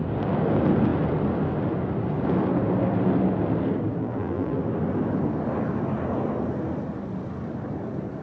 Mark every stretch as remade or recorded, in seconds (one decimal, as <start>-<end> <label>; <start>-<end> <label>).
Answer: 0.0-4.0 recorded; 4.0-4.6 remade; 4.6-8.2 recorded